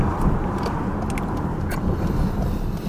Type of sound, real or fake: real